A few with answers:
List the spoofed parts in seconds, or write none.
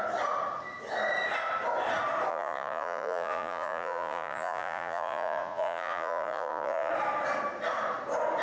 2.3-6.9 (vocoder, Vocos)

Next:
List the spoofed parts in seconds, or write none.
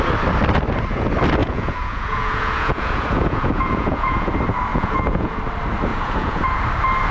1.4-4.3 (vocoder, Vocos); 4.7-5.4; 5.9-6.6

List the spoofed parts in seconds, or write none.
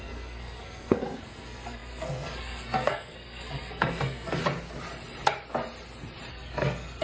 0.0-4.4 (codec, SNAC); 6.3-7.0